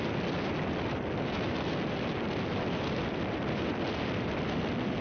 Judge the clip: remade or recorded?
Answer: recorded